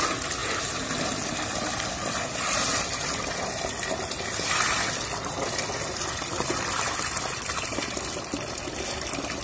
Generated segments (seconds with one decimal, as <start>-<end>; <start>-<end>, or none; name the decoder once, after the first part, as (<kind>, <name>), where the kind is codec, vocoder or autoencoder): none